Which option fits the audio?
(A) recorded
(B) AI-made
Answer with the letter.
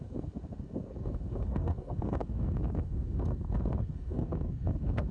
B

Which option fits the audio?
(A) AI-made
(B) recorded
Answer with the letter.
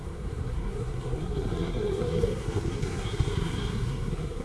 A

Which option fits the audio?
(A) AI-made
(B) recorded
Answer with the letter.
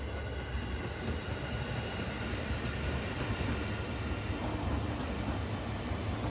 B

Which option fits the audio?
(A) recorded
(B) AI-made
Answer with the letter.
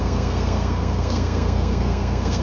B